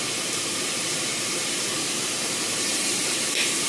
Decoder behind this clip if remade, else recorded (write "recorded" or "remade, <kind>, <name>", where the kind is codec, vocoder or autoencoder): remade, vocoder, BigVGAN v2